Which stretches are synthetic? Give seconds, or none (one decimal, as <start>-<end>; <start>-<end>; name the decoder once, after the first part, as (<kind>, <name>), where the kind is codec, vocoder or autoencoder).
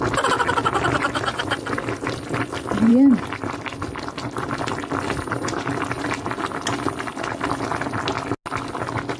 none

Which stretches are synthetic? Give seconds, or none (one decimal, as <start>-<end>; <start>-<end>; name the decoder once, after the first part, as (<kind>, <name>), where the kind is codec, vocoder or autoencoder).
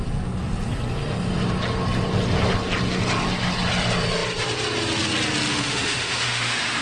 5.5-6.8 (autoencoder, DAC-VAE)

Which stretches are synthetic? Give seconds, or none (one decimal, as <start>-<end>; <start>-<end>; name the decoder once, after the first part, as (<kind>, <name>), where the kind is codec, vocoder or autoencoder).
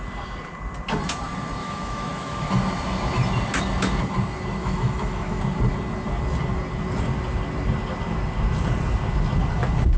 1.6-2.5 (autoencoder, DAC-VAE); 4.6-5.4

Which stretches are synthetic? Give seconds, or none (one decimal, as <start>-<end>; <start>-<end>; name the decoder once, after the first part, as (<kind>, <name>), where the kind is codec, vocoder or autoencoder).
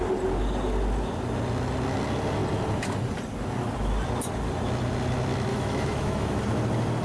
5.5-6.4 (autoencoder, DAC-VAE)